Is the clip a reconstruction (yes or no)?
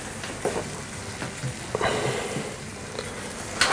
no